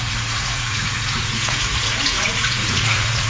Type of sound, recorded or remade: remade